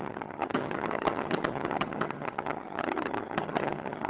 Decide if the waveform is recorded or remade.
remade